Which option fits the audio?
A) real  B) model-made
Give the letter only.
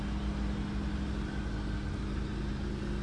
A